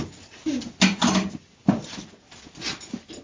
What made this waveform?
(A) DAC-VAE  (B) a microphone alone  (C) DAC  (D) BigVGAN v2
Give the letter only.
B